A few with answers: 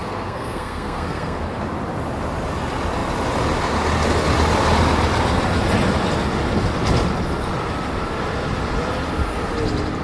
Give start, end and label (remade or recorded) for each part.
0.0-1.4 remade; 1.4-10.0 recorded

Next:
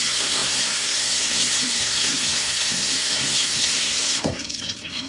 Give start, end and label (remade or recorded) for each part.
0.0-5.1 remade

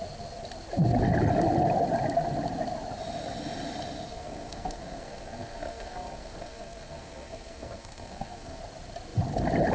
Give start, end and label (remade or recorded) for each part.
0.0-4.1 recorded; 4.1-8.6 remade; 8.6-9.7 recorded

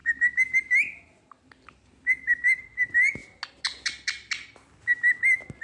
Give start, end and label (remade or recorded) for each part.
0.0-5.6 recorded

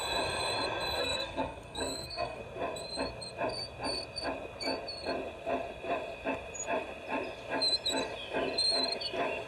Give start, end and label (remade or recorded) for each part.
0.0-1.0 recorded; 1.0-2.4 remade; 2.4-9.5 recorded

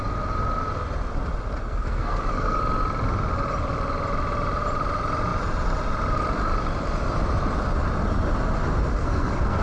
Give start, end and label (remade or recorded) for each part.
0.0-1.6 recorded; 1.6-2.6 remade; 2.6-8.9 recorded; 8.9-9.6 remade